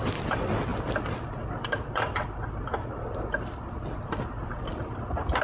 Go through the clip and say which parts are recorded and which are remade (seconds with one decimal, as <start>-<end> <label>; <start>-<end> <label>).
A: 0.0-5.4 recorded